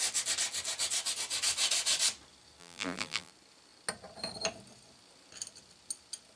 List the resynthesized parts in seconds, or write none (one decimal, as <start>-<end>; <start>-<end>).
2.6-3.3